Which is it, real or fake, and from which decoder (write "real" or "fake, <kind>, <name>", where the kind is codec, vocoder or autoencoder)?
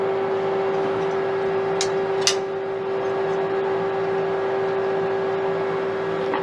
real